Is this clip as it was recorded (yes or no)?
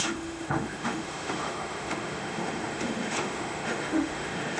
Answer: no